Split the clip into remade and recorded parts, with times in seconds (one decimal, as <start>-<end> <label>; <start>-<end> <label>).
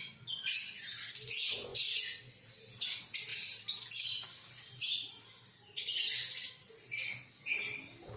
0.0-8.2 recorded